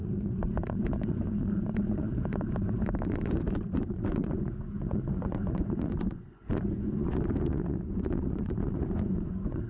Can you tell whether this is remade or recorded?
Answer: remade